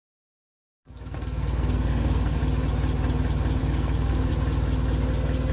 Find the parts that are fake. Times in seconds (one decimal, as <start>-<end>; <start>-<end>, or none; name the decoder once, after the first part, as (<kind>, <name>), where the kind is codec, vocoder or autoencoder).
0.6-2.4 (codec, SNAC); 3.6-4.3